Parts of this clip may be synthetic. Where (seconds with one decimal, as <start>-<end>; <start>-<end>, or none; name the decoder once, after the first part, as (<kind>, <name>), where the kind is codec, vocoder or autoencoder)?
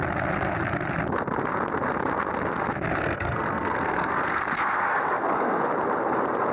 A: 3.0-5.6 (codec, SNAC)